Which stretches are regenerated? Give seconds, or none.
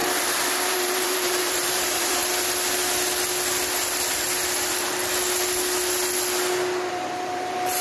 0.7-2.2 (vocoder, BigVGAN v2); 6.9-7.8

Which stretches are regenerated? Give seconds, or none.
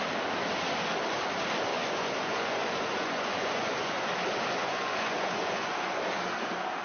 1.7-4.0 (vocoder, Vocos); 4.6-6.0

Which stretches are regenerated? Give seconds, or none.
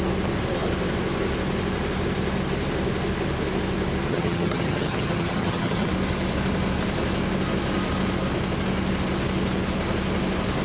4.1-5.9 (vocoder, HiFi-GAN)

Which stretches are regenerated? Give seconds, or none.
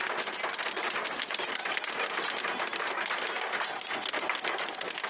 none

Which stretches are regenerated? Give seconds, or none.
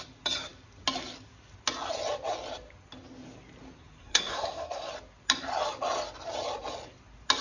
4.0-4.9 (codec, SNAC)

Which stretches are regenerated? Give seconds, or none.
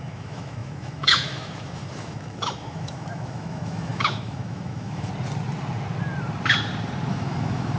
0.0-5.1 (autoencoder, DAC-VAE); 7.1-7.8